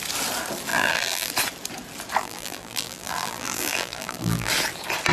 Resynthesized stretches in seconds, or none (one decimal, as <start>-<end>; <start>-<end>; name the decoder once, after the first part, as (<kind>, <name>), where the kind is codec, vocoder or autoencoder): 0.7-1.3 (vocoder, BigVGAN v2); 2.2-4.5